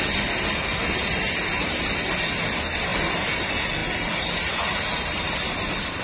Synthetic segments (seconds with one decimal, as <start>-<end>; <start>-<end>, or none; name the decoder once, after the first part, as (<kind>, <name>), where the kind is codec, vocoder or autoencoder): none